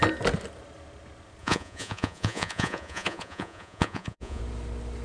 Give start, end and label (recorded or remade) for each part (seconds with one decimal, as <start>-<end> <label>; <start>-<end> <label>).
0.0-1.4 recorded; 1.4-4.4 remade; 4.4-5.0 recorded